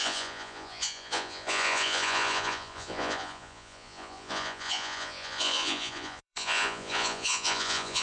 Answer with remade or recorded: remade